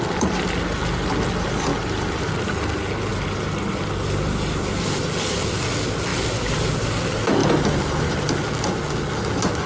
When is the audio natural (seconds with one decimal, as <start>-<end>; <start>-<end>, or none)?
0.0-1.7; 2.3-3.1; 3.9-9.7